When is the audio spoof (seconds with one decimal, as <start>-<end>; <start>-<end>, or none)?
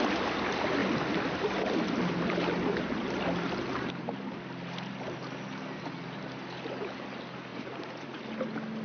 7.5-8.2